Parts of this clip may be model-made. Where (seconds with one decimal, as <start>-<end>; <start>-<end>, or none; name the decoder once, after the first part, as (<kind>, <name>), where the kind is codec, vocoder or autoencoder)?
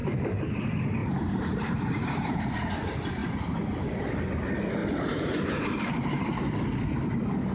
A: 0.0-0.6 (vocoder, BigVGAN v2); 1.0-2.4; 3.2-4.0; 4.8-6.4